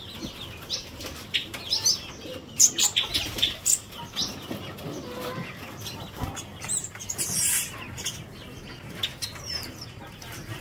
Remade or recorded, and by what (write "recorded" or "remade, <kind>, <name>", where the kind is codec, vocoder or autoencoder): recorded